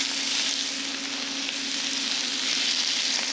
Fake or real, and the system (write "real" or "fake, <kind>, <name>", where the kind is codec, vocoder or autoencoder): real